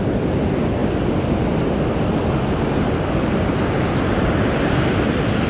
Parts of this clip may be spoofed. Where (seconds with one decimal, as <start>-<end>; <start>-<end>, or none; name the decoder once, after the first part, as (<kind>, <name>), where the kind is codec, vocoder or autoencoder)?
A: none